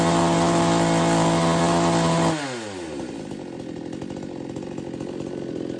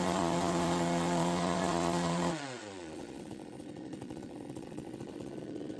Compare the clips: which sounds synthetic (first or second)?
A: second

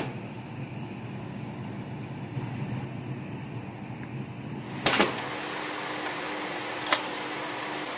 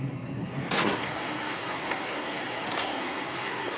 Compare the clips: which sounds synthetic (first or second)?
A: second